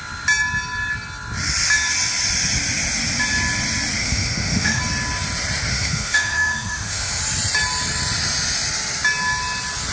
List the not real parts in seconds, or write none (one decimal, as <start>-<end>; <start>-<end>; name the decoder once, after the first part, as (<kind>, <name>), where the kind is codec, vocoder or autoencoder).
4.0-4.8 (autoencoder, DAC-VAE); 5.7-7.2